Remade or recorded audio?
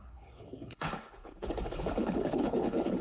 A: remade